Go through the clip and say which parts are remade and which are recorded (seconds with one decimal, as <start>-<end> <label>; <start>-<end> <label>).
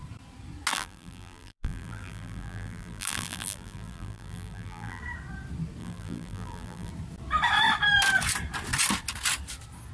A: 0.0-0.7 recorded; 0.7-5.0 remade; 5.0-5.8 recorded; 5.8-6.9 remade; 6.9-9.9 recorded